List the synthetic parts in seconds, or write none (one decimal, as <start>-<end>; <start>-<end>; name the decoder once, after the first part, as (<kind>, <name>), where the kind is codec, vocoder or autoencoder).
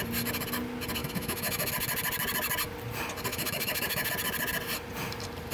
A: 1.0-1.7 (autoencoder, DAC-VAE); 3.3-4.1